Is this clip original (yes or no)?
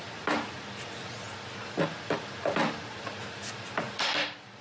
yes